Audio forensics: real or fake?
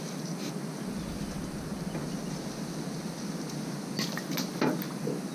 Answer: real